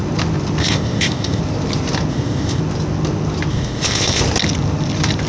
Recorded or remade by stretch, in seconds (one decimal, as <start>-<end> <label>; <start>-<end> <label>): 0.0-0.6 recorded; 0.6-1.4 remade; 1.4-2.1 recorded; 2.1-2.6 remade; 2.6-3.5 recorded; 3.5-4.2 remade; 4.2-5.3 recorded